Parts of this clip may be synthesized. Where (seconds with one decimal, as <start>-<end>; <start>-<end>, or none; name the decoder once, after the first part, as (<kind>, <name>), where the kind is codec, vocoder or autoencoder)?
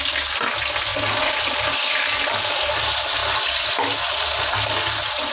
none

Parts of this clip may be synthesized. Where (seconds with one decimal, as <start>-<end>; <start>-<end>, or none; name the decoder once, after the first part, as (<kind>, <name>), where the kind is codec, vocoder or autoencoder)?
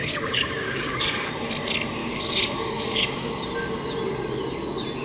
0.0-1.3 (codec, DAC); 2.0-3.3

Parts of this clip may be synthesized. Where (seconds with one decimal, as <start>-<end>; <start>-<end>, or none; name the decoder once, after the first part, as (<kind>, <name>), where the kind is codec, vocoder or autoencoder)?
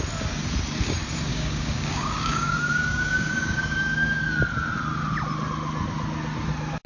1.3-4.2 (codec, DAC)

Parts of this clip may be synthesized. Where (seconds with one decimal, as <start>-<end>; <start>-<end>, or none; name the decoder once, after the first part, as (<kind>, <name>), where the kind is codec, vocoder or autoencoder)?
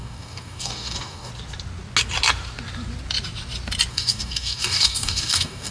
0.0-1.3 (codec, DAC); 3.9-5.7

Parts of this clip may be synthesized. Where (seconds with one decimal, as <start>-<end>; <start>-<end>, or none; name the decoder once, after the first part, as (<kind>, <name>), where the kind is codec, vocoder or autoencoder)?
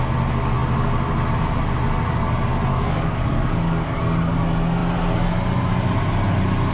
2.7-4.0 (codec, DAC)